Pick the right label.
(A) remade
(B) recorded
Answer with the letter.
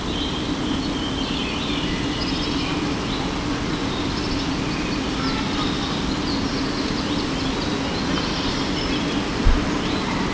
B